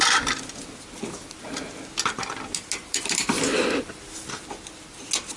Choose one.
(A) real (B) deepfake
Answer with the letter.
A